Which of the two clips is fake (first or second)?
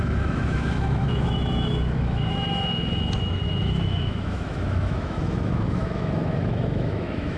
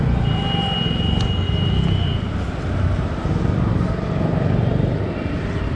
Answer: first